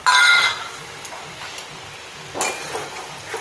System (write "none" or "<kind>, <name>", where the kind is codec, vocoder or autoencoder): none